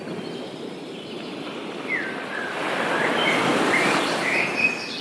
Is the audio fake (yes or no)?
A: yes